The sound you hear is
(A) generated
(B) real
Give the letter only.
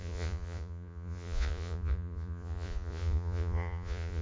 A